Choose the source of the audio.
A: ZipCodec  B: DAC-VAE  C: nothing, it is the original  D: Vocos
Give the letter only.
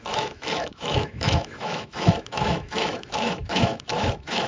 B